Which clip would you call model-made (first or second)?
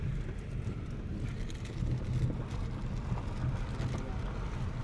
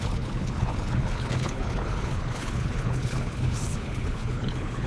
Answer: second